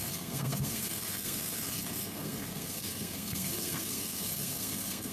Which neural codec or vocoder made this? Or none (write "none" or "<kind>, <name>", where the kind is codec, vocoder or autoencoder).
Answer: codec, SNAC